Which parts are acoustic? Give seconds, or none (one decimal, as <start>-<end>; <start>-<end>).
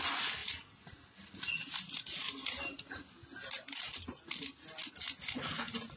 0.0-6.0